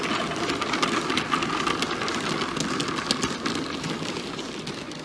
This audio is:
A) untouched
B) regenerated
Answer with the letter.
A